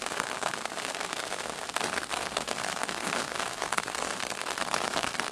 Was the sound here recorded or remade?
remade